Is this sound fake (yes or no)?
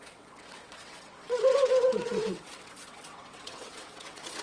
yes